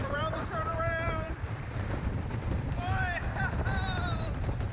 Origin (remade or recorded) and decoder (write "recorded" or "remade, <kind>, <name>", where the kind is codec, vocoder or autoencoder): remade, vocoder, BigVGAN v2